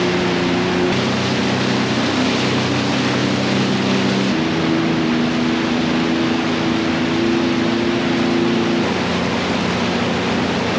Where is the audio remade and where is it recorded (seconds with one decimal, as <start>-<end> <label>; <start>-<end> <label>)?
0.0-10.8 recorded